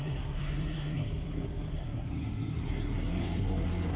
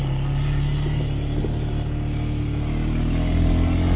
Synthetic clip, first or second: first